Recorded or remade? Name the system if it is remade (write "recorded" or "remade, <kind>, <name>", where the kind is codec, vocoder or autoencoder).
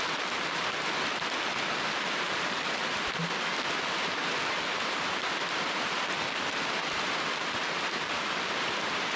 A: recorded